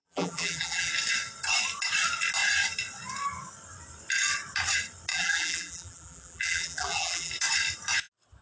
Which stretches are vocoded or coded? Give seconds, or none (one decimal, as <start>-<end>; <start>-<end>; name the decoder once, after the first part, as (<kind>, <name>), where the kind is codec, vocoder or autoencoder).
0.0-0.9 (vocoder, BigVGAN v2); 5.1-7.3